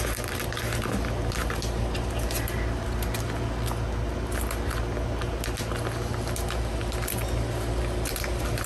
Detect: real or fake real